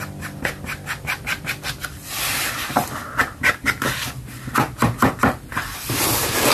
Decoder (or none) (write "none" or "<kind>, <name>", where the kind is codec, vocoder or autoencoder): vocoder, BigVGAN v2